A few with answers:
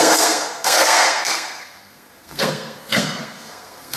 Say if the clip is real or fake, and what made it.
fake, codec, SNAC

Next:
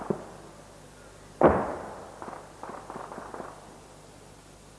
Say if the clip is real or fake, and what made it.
real